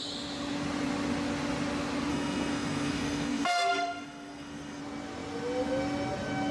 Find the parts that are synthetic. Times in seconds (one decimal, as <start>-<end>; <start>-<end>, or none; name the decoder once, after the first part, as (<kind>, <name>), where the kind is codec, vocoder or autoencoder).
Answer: 2.1-4.8 (codec, SNAC)